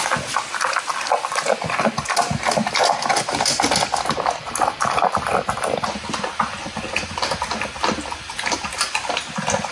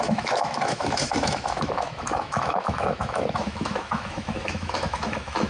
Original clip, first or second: first